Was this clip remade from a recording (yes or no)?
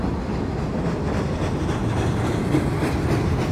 no